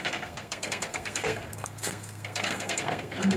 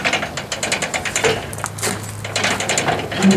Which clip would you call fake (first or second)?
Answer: first